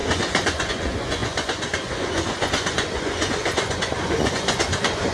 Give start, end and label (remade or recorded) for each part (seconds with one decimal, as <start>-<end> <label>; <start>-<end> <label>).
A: 0.0-5.1 remade